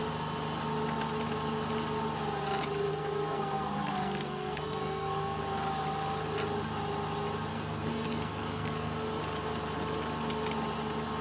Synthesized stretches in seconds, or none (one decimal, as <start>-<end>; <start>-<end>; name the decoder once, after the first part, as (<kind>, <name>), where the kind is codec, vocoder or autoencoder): 2.9-5.4 (codec, SNAC); 7.5-9.2